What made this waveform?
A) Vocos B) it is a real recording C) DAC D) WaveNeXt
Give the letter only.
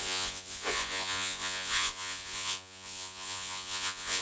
A